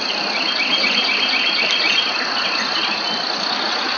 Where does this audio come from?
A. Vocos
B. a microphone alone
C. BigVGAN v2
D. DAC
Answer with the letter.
B